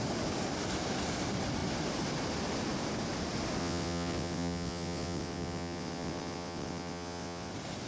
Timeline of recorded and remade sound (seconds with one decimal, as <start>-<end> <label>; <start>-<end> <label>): 0.0-3.6 recorded; 3.6-7.5 remade; 7.5-7.9 recorded